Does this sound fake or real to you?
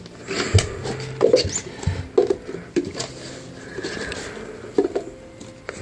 real